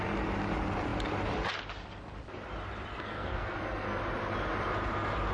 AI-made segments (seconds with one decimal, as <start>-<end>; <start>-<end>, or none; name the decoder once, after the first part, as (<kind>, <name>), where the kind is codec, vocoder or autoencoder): 2.9-4.0 (codec, SNAC)